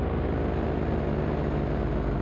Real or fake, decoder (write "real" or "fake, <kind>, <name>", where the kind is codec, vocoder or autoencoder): real